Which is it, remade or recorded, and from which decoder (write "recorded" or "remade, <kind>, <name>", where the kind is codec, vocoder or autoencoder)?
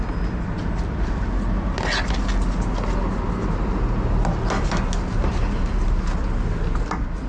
recorded